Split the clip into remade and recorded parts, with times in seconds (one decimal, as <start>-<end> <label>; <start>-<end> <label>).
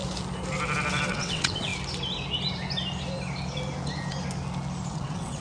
0.0-1.1 recorded; 1.1-1.7 remade; 1.7-4.9 recorded; 4.9-5.4 remade